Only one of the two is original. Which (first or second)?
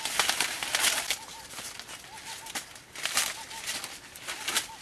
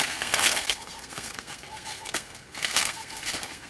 first